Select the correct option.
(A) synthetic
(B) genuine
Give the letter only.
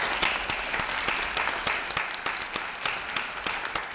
B